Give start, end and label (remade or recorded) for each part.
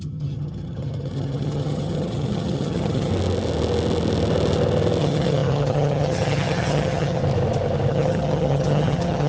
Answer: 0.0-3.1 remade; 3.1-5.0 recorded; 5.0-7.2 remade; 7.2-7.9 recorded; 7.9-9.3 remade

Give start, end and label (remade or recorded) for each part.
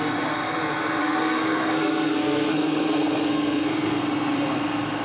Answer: 0.0-1.0 recorded; 1.0-4.0 remade; 4.0-5.0 recorded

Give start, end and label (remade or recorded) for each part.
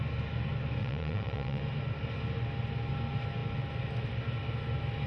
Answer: 0.0-0.8 recorded; 0.8-1.6 remade; 1.6-5.1 recorded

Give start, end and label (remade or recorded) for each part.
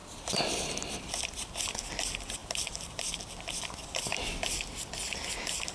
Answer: 0.0-2.4 recorded; 2.4-3.0 remade; 3.0-5.7 recorded